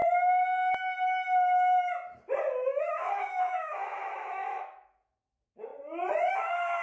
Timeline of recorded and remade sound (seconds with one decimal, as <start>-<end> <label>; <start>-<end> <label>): 0.0-2.8 recorded; 2.8-5.7 remade; 5.7-6.3 recorded; 6.3-6.8 remade